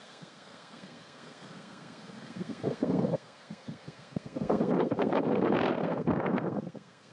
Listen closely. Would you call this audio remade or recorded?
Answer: remade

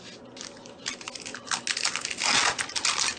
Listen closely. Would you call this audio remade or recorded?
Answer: recorded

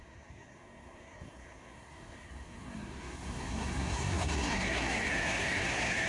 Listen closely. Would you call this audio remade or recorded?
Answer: remade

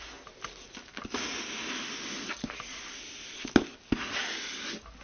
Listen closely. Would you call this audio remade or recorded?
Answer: recorded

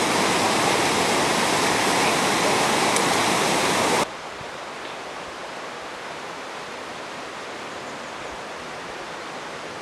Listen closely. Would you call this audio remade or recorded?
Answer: recorded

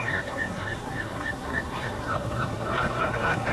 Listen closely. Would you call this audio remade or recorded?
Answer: remade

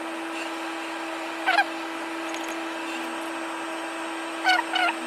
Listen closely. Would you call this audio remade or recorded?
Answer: recorded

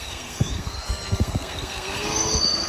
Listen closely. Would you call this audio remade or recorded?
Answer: remade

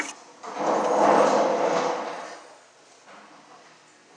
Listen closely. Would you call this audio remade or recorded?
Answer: recorded